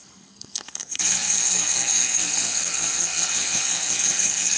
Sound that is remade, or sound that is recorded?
remade